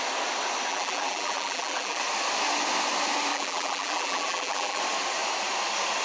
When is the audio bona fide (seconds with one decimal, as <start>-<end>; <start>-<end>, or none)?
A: 0.0-0.7; 2.0-3.3; 4.8-6.0